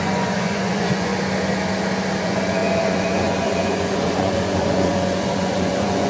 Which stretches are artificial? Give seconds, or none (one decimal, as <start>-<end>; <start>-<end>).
0.0-1.1; 2.2-6.1